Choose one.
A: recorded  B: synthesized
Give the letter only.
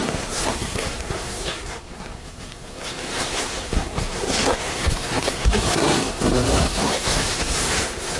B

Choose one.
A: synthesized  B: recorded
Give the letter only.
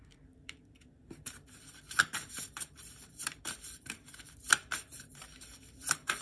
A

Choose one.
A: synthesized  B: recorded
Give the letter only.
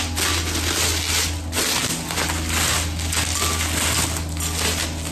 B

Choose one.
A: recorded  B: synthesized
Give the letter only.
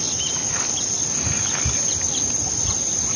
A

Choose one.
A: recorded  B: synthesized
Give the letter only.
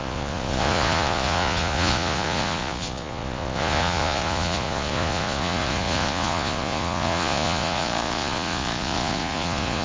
B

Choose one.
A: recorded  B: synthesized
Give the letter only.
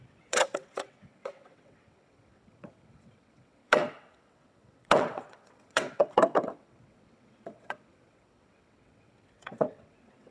B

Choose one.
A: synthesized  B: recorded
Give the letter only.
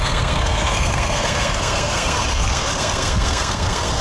A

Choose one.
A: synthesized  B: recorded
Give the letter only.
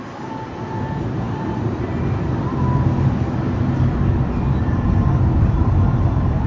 A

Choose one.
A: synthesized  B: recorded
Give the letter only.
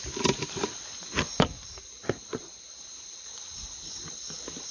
B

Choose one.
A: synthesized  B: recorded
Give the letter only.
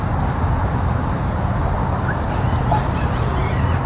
B